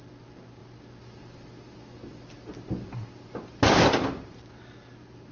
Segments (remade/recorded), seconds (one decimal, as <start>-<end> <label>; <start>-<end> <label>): 0.0-5.3 recorded